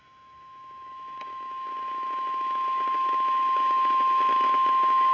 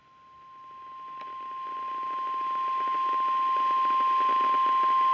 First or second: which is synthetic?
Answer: first